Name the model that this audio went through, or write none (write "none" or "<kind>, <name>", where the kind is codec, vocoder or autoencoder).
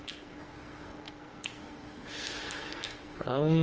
codec, SNAC